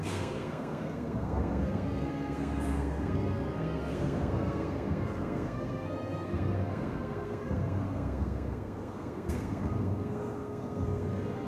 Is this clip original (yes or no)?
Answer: no